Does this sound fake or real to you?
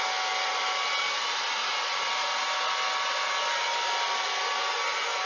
real